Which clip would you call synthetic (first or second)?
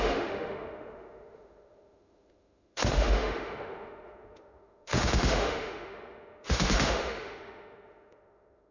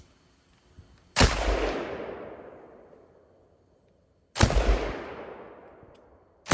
first